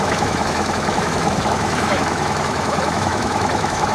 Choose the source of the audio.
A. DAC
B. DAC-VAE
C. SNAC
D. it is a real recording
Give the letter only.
B